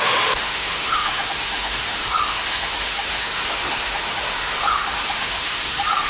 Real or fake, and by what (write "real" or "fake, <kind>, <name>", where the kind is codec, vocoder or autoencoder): fake, autoencoder, DAC-VAE